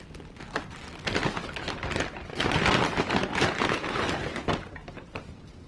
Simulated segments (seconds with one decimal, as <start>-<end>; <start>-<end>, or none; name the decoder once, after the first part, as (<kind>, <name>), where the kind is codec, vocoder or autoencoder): 4.8-5.7 (vocoder, BigVGAN v2)